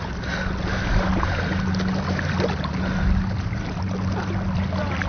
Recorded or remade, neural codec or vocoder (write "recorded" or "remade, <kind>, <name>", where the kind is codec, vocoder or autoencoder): recorded